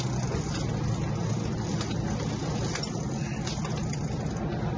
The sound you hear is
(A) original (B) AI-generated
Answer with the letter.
A